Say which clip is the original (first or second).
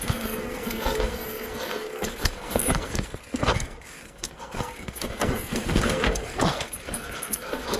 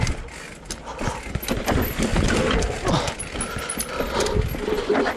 second